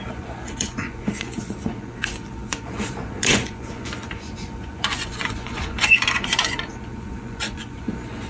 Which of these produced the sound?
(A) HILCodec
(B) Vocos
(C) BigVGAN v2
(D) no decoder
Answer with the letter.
B